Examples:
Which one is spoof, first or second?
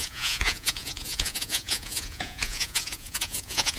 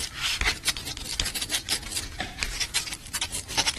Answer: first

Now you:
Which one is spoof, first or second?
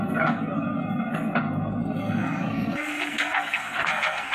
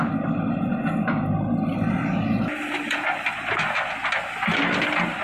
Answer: first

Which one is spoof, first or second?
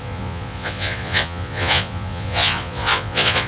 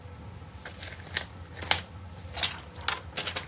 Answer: first